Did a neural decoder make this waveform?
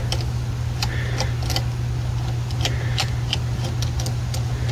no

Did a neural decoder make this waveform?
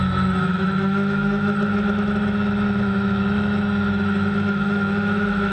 yes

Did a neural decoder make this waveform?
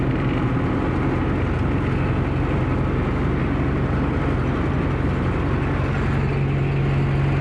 no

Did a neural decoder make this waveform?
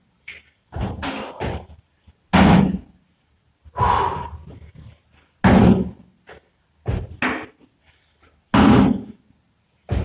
no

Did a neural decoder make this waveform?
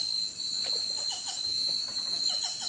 no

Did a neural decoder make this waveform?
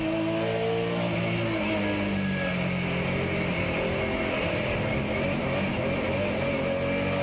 no